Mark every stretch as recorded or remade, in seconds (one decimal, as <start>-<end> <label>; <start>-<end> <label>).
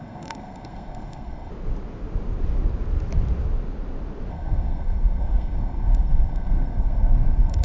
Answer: 0.0-1.5 remade; 1.5-4.3 recorded; 4.3-7.6 remade